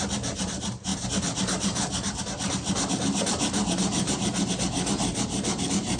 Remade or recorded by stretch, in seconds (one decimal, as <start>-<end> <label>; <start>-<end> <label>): 0.0-6.0 recorded